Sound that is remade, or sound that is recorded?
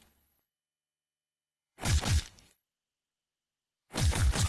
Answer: remade